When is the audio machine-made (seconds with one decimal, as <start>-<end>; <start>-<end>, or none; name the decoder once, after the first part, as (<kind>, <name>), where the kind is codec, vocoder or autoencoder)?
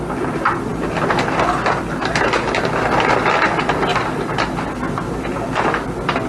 none